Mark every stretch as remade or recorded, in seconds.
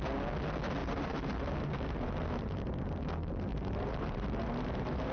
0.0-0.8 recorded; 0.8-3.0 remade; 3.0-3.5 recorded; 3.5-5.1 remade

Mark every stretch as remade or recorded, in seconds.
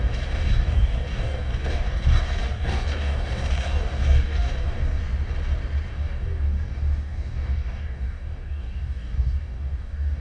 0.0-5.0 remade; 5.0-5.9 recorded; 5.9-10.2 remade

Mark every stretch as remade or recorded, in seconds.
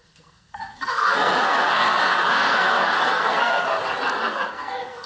0.0-3.8 remade; 3.8-4.3 recorded; 4.3-5.1 remade